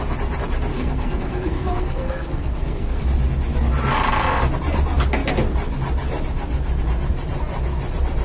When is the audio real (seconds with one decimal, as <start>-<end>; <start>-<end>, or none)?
0.0-0.7; 3.0-8.2